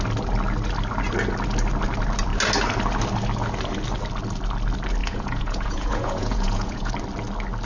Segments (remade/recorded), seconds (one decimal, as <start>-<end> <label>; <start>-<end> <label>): 0.0-5.0 recorded; 5.0-6.9 remade; 6.9-7.6 recorded